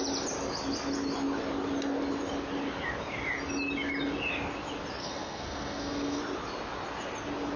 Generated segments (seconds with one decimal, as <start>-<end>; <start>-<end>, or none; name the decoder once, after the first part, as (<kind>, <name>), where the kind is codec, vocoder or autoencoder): 5.0-6.2 (codec, SNAC)